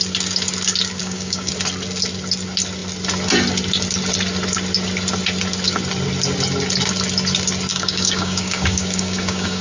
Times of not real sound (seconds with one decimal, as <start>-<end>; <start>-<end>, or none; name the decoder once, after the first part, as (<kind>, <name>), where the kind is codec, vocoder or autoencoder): 1.0-1.5 (codec, DAC); 7.7-9.6